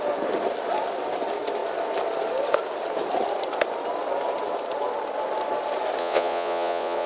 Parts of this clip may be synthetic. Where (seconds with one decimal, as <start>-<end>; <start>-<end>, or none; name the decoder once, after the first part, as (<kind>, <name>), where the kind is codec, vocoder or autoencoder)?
6.0-7.1 (vocoder, Vocos)

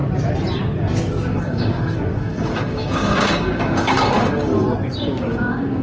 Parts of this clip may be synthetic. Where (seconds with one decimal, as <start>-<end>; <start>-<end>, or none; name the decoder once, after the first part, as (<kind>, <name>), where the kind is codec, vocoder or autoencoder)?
1.3-4.5 (codec, DAC); 5.2-5.8

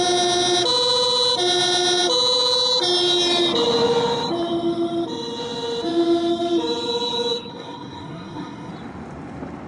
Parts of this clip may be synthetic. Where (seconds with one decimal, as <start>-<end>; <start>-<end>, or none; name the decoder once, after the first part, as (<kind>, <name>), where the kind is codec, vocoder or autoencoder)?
7.5-8.7 (codec, SNAC)

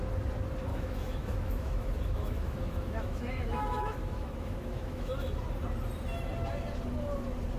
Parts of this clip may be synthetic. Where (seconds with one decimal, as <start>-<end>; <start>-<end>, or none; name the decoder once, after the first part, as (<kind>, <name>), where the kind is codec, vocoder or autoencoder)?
0.7-5.3 (autoencoder, DAC-VAE)

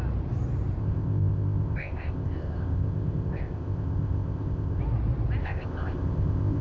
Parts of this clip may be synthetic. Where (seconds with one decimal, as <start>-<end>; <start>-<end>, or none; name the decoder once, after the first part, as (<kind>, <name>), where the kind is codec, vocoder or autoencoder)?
0.8-4.8 (codec, ZipCodec); 5.4-6.6

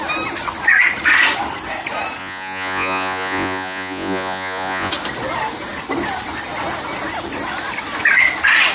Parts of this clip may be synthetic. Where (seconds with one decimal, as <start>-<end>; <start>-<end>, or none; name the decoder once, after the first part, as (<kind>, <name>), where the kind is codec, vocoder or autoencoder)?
2.2-4.9 (vocoder, Vocos)

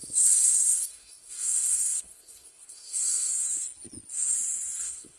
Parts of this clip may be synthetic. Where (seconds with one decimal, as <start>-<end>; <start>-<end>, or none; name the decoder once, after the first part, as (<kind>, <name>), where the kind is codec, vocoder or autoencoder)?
0.0-3.3 (codec, SNAC); 4.8-5.2

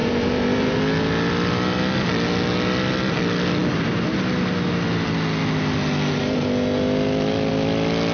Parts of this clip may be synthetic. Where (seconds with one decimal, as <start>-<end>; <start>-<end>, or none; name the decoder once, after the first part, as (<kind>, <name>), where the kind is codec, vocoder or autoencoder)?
0.0-0.8 (vocoder, BigVGAN v2)